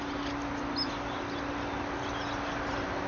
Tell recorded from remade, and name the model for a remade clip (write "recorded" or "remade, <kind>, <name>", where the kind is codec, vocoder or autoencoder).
recorded